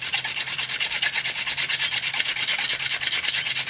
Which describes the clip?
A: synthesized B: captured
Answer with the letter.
B